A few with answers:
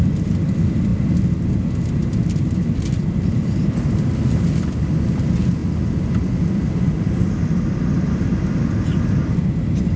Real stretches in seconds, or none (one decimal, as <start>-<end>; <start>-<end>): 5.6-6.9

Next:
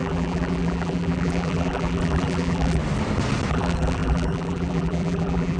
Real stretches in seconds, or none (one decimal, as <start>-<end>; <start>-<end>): 2.8-3.5

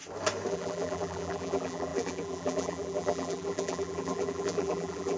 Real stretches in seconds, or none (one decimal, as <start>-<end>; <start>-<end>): 0.0-0.5

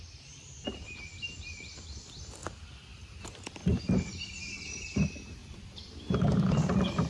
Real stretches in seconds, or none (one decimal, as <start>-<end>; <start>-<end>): none

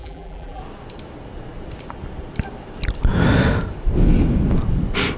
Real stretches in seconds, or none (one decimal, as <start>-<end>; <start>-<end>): 0.6-5.2

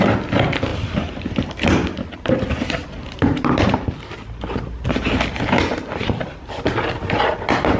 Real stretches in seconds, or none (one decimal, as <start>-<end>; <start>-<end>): 0.0-0.7; 1.5-2.8; 5.3-7.8